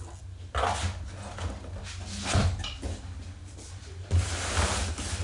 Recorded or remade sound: recorded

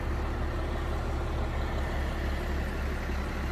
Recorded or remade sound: recorded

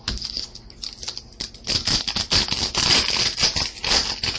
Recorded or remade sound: recorded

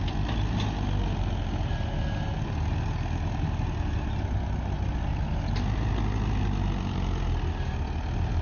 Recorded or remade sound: recorded